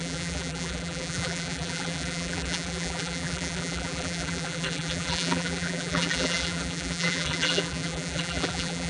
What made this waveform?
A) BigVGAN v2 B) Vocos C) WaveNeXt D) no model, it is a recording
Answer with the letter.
A